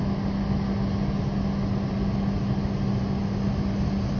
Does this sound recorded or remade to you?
recorded